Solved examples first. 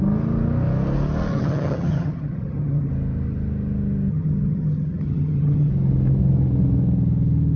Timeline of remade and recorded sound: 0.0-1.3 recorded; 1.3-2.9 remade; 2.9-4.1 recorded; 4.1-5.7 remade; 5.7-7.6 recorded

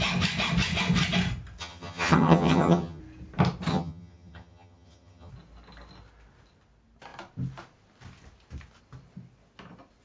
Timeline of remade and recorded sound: 0.0-1.6 recorded; 1.6-3.0 remade; 3.0-3.7 recorded; 3.7-5.3 remade; 5.3-10.0 recorded

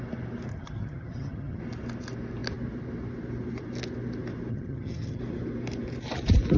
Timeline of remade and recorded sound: 0.0-0.5 recorded; 0.5-1.6 remade; 1.6-4.5 recorded; 4.5-5.2 remade; 5.2-6.6 recorded

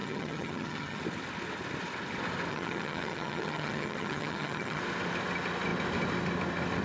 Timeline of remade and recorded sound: 0.0-1.0 remade; 1.0-2.5 recorded; 2.5-4.8 remade; 4.8-6.8 recorded

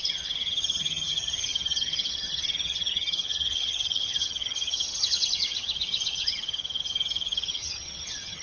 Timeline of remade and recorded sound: 0.0-8.4 remade

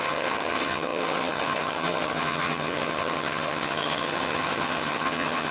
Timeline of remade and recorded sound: 0.0-5.5 remade